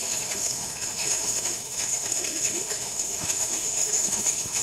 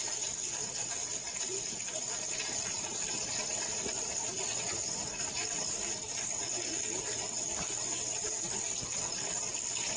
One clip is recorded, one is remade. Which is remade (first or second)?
first